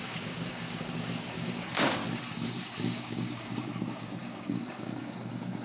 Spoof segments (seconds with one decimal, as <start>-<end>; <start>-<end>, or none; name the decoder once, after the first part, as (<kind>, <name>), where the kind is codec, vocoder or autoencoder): 0.0-2.0 (codec, DAC); 2.8-5.6